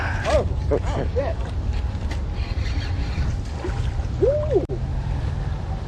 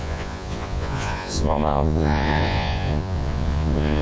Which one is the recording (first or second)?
first